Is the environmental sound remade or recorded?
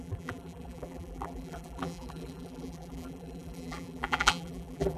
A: remade